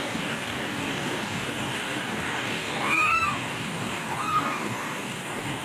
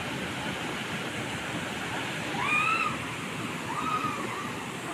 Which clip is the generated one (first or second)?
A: first